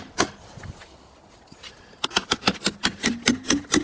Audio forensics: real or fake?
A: real